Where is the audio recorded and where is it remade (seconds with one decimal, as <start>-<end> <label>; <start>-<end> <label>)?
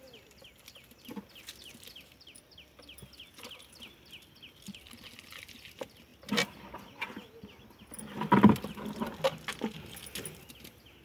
0.0-11.0 recorded